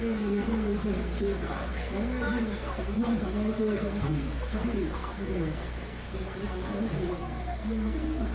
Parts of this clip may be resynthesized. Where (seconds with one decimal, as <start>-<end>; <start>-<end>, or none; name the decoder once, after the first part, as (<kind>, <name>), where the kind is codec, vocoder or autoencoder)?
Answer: 0.0-8.3 (codec, SNAC)